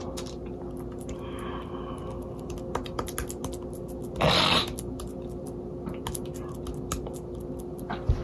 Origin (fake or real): real